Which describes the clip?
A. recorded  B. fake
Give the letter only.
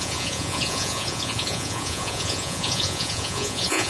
B